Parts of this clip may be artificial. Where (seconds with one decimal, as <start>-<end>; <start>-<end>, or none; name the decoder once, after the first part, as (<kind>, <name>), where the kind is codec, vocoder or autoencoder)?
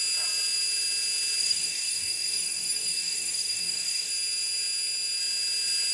1.4-4.1 (codec, DAC)